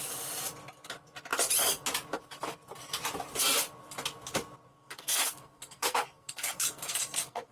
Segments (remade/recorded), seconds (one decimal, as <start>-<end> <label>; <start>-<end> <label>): 0.0-4.7 recorded; 4.7-7.5 remade